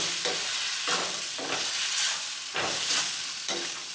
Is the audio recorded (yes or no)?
yes